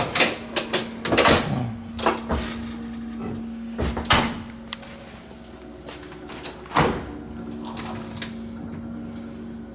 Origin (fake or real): real